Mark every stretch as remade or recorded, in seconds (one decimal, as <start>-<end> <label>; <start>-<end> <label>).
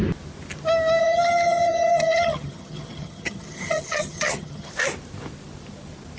0.0-1.0 recorded; 1.0-4.7 remade; 4.7-6.2 recorded